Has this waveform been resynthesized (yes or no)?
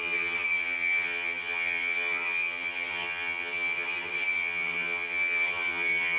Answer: yes